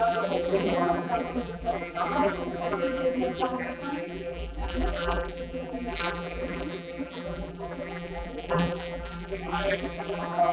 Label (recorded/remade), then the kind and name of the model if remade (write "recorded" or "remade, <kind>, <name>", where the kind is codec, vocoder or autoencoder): remade, vocoder, BigVGAN v2